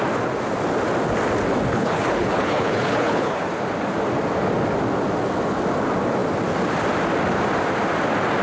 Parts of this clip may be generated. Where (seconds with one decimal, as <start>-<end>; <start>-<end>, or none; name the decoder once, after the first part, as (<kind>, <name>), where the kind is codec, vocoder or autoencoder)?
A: 1.7-3.5 (codec, HILCodec)